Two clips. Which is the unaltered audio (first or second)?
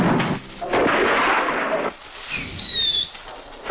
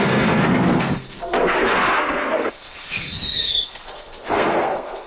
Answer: first